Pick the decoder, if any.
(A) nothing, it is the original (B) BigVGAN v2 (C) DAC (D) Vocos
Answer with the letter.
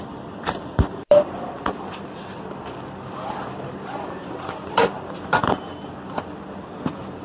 B